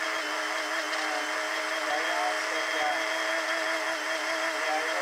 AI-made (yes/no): no